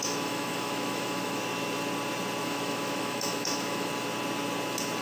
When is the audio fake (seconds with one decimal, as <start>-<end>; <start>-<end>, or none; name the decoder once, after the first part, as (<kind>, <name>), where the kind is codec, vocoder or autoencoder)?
0.0-1.4 (autoencoder, DAC-VAE); 2.4-3.9